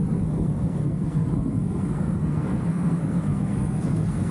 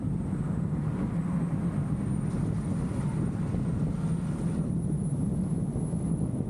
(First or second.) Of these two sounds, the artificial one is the first